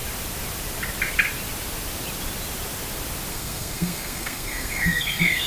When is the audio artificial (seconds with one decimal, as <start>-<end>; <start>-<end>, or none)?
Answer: 3.3-5.5